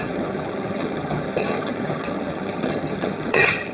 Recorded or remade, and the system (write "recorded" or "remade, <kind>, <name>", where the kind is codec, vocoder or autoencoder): remade, vocoder, HiFi-GAN